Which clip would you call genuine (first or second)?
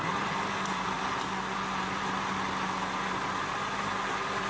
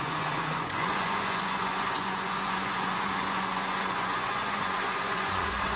first